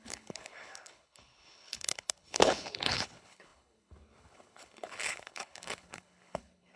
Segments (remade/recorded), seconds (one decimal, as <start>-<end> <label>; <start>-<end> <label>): 0.0-6.8 remade